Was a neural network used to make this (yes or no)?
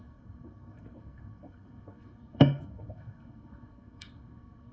yes